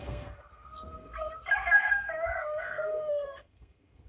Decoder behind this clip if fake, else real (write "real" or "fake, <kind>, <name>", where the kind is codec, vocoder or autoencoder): fake, codec, SNAC